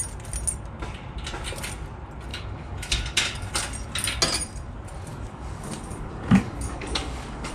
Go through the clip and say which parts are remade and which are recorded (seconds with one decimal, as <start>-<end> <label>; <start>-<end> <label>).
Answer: 0.0-2.3 recorded; 2.3-3.5 remade; 3.5-5.1 recorded; 5.1-7.5 remade